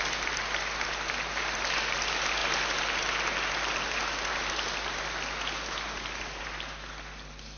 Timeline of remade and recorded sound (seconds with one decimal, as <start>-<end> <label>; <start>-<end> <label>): 0.0-7.6 recorded